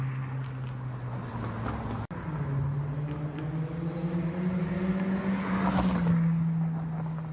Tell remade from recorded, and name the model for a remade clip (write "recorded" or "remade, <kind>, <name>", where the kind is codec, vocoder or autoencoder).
recorded